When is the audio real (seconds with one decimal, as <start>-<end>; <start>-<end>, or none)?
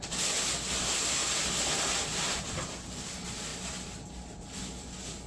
0.0-5.3